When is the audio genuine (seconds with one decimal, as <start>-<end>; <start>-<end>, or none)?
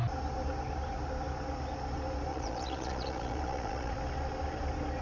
0.0-2.3; 3.9-5.0